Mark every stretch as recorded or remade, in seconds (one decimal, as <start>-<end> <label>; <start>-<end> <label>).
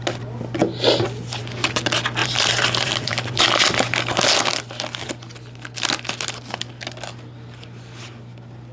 0.0-2.2 recorded; 2.2-3.4 remade; 3.4-8.7 recorded